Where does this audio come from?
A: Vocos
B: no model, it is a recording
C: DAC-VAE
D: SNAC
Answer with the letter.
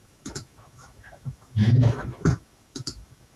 C